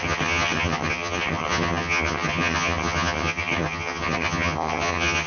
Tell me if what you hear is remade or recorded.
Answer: remade